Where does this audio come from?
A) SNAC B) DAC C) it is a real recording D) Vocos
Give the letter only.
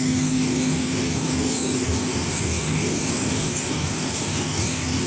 B